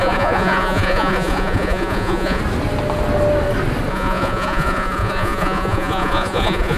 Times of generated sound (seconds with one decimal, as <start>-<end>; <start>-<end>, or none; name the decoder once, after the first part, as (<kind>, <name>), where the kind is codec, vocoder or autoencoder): 0.0-2.4 (vocoder, Vocos); 3.9-6.8